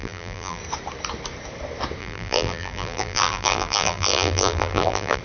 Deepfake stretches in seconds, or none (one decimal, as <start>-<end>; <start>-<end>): 0.0-0.6; 2.0-5.2